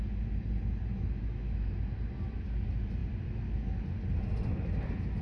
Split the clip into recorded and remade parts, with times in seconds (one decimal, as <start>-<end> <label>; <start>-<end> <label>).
0.0-0.9 recorded; 0.9-1.7 remade; 1.7-5.2 recorded